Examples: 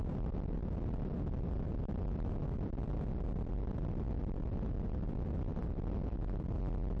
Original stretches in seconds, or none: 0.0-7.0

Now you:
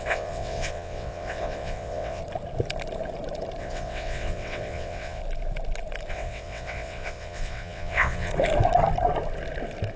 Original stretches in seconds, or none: 2.2-3.6; 5.2-6.1; 8.3-10.0

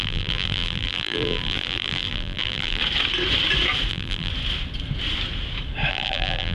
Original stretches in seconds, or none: 2.8-3.9; 4.3-5.9

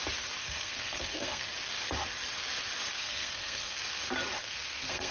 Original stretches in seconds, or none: 0.0-0.4; 1.5-3.0; 3.8-4.4

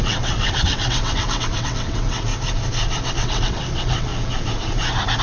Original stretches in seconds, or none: 2.3-3.1; 4.1-5.2